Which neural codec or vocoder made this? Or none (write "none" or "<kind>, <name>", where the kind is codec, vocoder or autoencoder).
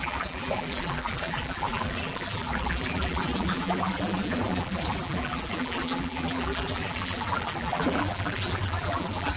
vocoder, BigVGAN v2